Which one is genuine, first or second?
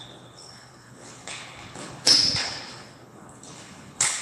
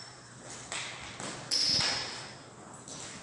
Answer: second